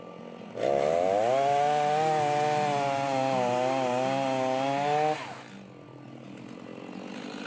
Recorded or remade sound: recorded